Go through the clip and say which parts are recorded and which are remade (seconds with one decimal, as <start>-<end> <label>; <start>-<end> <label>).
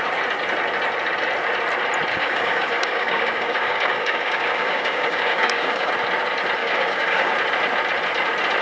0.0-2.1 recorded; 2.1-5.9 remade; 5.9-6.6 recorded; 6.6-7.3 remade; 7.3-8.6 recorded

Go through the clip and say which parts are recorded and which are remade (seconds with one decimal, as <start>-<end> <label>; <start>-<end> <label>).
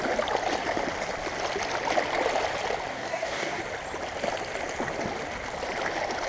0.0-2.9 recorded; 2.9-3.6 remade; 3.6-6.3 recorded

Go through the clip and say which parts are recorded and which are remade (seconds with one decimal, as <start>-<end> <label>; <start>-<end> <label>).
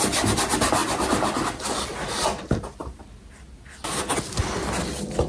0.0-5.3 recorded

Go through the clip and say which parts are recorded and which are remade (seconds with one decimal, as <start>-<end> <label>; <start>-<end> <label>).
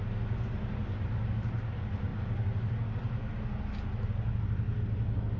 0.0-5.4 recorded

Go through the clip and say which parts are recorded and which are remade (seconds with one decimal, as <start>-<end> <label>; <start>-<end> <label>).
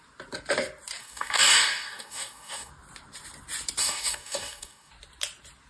0.0-1.0 recorded; 1.0-2.7 remade; 2.7-3.8 recorded; 3.8-4.9 remade; 4.9-5.7 recorded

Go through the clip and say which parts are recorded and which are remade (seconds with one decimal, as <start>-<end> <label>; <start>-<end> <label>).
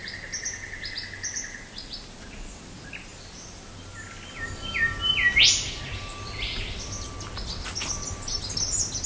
0.0-9.1 recorded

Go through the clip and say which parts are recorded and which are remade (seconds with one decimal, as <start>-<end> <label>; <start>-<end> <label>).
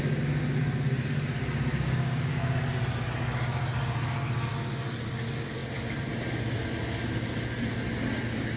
0.0-1.7 recorded; 1.7-2.5 remade; 2.5-8.6 recorded